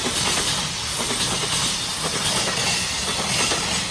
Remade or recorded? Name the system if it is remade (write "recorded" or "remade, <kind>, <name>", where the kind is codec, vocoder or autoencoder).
recorded